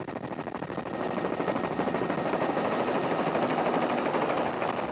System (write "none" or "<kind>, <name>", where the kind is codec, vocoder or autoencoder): none